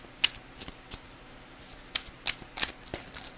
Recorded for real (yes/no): yes